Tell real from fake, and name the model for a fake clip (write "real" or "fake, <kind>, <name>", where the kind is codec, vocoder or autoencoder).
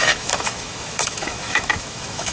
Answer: fake, autoencoder, DAC-VAE